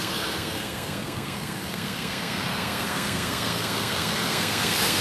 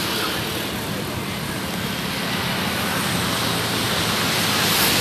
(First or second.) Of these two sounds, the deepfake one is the first